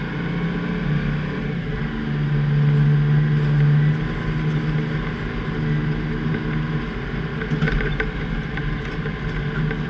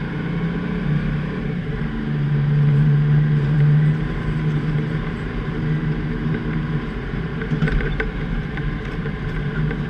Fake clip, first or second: second